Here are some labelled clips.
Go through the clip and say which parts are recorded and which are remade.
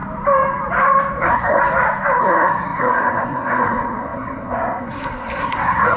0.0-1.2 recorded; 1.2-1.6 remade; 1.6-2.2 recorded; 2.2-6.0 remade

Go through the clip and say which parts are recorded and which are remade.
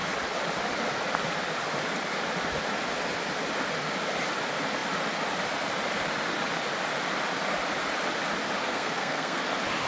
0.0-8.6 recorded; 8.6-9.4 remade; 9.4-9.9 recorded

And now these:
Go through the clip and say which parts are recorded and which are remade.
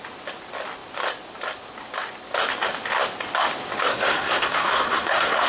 0.0-3.9 recorded; 3.9-5.5 remade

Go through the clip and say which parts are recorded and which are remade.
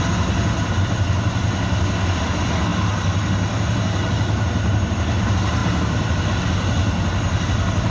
0.0-7.9 recorded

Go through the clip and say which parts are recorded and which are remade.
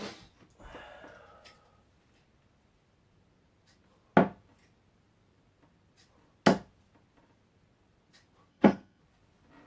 0.0-8.5 recorded; 8.5-9.0 remade; 9.0-9.7 recorded